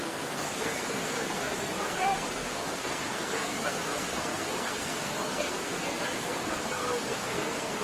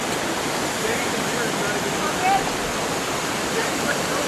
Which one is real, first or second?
second